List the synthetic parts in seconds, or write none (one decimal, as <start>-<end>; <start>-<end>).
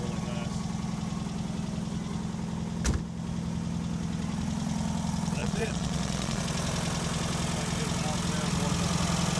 5.4-6.4